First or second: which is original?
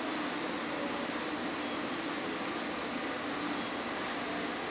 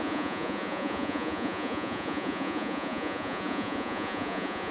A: first